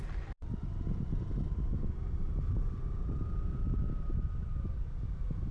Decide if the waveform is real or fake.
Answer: real